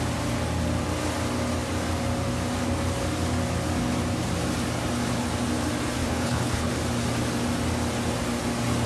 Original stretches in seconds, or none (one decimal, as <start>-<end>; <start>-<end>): 0.0-6.0; 6.7-8.9